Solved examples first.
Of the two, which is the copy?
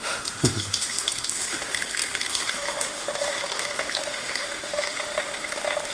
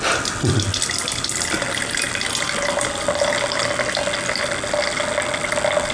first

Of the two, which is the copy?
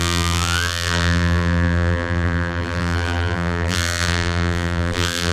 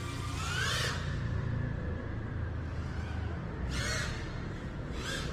first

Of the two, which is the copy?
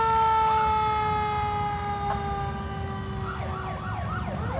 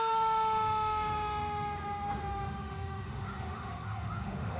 second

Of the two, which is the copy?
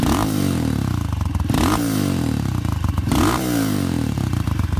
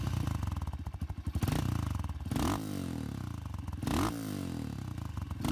first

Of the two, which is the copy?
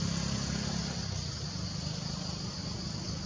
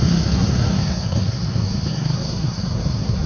second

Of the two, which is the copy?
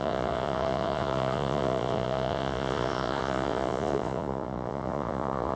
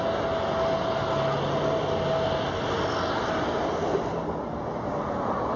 first